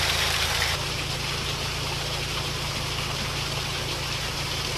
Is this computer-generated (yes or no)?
yes